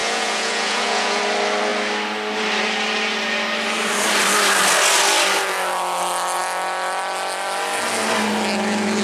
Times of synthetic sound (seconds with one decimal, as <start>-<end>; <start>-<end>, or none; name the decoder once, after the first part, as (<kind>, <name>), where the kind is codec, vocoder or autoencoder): 0.0-1.2 (vocoder, Vocos)